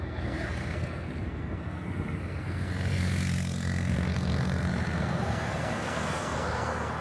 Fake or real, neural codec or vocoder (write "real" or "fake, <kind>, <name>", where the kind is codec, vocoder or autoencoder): fake, codec, SNAC